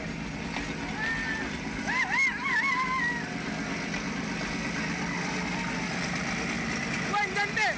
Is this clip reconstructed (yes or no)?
no